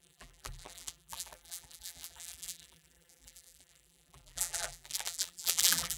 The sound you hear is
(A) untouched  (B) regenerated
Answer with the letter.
B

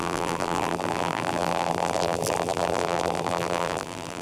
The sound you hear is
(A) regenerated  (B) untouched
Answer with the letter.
A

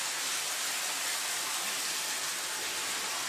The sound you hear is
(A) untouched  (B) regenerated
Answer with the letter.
A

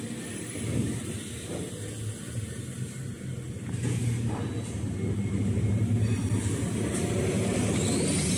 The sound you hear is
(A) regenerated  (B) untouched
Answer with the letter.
B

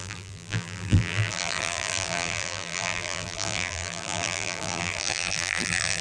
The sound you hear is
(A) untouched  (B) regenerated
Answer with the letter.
B